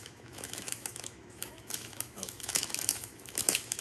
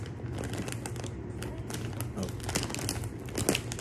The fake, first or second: first